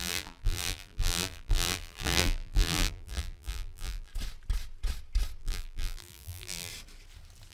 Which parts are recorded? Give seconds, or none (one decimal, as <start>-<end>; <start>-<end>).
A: 4.1-5.4; 6.7-7.5